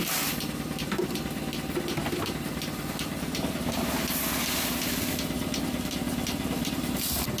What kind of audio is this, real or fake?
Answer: fake